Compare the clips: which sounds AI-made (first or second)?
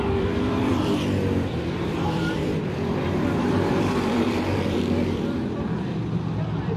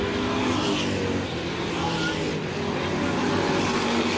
first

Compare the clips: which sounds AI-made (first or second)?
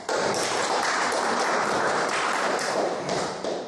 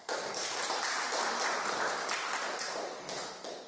first